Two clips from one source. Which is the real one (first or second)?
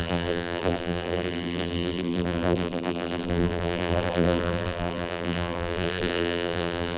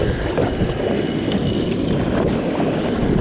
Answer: second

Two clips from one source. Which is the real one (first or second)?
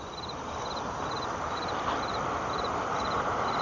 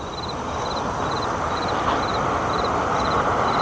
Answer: second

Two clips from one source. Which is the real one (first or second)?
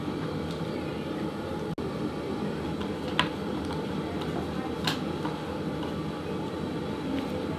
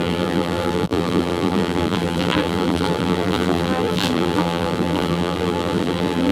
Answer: first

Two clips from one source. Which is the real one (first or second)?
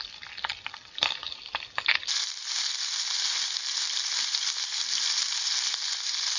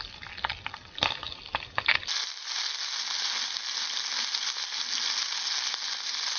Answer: second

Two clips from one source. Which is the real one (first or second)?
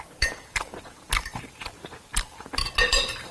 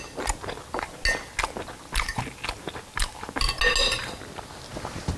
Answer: second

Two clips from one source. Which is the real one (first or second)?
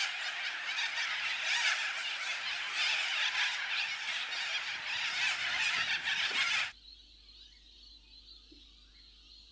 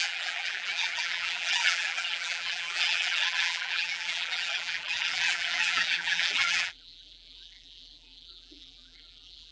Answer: first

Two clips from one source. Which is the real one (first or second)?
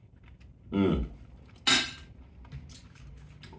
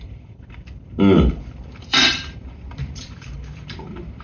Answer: first